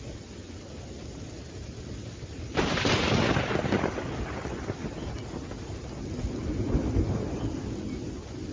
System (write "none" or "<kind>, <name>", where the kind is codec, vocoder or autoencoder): none